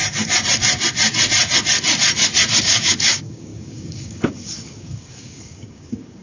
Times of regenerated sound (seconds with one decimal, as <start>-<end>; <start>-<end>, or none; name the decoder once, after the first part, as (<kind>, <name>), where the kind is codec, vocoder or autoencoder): 2.6-6.2 (codec, DAC)